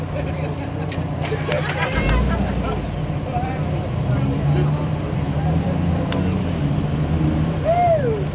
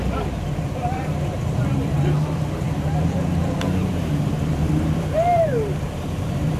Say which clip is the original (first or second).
first